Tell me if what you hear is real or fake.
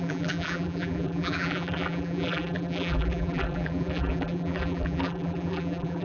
fake